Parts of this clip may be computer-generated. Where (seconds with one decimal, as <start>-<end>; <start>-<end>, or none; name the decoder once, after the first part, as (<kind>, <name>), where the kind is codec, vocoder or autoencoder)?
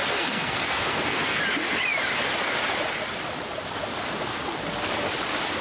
0.0-1.4 (codec, SNAC)